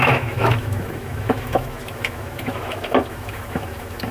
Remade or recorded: remade